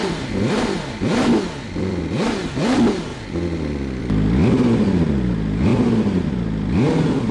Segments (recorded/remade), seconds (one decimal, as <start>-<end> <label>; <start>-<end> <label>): 0.0-2.0 remade; 2.0-7.3 recorded